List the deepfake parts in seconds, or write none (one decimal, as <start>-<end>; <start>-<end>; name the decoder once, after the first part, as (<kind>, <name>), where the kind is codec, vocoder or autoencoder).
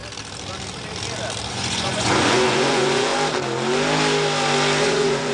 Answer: 1.5-3.1 (vocoder, Vocos); 4.8-5.3